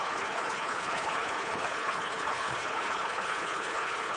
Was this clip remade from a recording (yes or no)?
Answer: yes